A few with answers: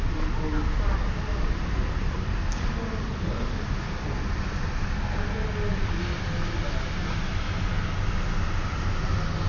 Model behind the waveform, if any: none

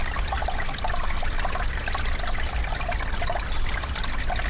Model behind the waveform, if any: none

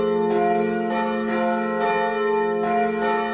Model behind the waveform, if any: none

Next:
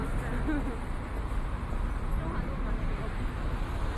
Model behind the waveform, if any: none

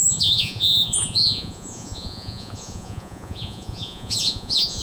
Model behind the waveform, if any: vocoder, Vocos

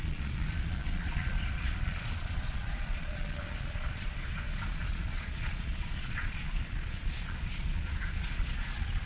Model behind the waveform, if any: vocoder, Vocos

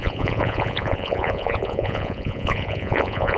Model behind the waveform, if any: vocoder, Vocos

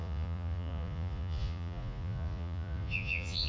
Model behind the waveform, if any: vocoder, Vocos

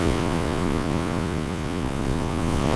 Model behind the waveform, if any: vocoder, Vocos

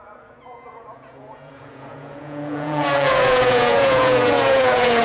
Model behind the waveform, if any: vocoder, Vocos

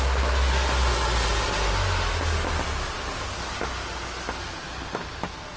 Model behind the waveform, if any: none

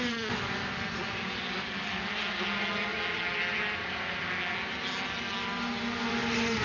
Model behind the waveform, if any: none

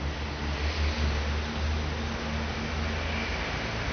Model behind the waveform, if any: none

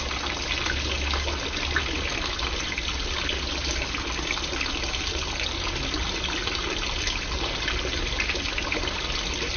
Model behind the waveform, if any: none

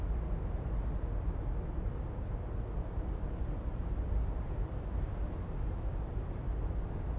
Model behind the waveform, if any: none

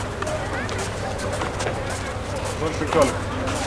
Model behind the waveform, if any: none